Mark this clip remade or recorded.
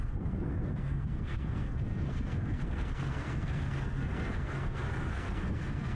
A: remade